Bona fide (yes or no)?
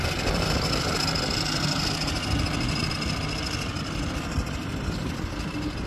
yes